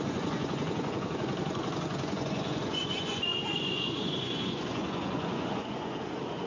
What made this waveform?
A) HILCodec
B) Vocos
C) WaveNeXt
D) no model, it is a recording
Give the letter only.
B